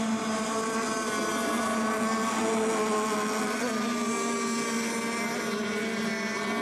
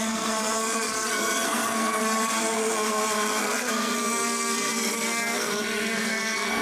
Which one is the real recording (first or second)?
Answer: first